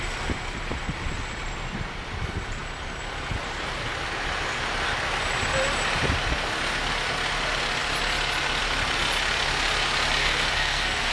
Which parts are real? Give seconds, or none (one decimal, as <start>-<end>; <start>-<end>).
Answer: 0.0-10.2